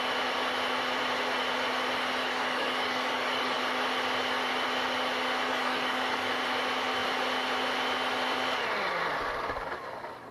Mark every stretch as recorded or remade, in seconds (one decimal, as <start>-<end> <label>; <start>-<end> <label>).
0.0-2.2 recorded; 2.2-3.6 remade; 3.6-5.5 recorded; 5.5-6.3 remade; 6.3-10.3 recorded